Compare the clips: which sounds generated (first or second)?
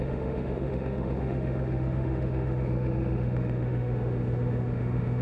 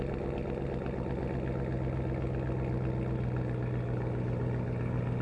first